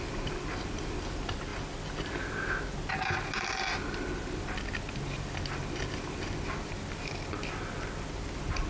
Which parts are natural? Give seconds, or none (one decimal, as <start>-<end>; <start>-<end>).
0.0-8.7